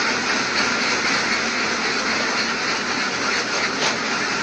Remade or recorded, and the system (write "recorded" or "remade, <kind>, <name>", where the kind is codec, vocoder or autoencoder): recorded